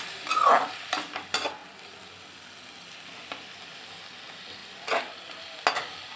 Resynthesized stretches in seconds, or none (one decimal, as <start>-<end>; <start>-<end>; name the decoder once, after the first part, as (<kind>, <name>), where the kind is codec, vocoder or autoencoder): none